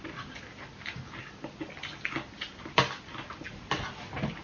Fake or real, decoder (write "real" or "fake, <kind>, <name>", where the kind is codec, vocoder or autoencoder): real